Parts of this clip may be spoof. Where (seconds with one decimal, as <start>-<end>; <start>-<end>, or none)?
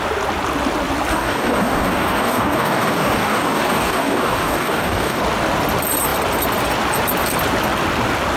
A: 1.1-5.2